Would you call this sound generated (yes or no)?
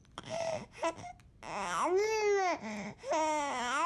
no